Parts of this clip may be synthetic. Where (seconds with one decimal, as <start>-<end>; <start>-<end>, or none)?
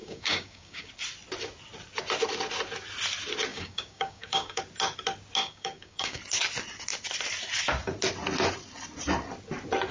0.0-0.9; 3.5-4.6; 5.4-6.2